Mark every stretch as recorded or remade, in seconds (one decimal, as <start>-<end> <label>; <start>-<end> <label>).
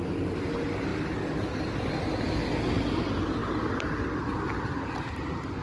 0.0-5.6 recorded